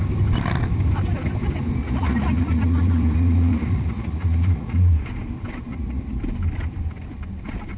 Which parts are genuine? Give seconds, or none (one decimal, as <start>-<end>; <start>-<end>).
0.0-1.8; 4.9-5.7; 6.2-7.8